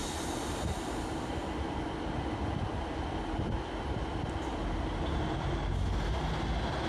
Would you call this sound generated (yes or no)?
no